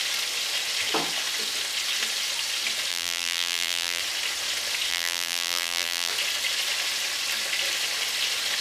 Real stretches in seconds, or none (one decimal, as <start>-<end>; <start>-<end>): 0.0-2.9; 4.0-4.9; 6.1-8.6